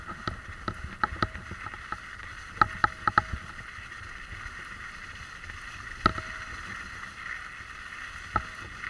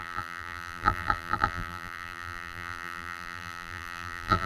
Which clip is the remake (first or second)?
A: second